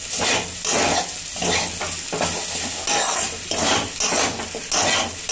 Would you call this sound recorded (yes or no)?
yes